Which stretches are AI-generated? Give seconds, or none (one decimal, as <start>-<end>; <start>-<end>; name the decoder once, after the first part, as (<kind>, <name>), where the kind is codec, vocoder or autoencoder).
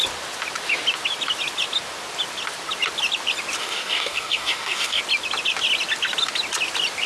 3.6-5.0 (codec, DAC)